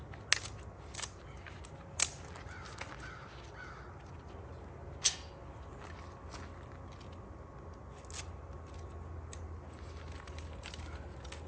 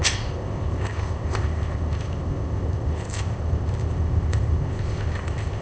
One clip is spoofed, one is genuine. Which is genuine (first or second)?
first